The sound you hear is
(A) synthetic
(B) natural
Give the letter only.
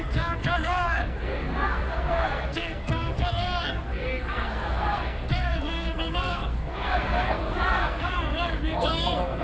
A